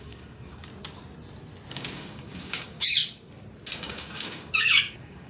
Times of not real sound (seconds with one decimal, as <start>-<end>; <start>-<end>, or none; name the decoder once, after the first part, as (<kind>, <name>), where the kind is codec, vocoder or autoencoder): 0.0-0.7 (codec, DAC); 1.7-3.0; 3.8-5.3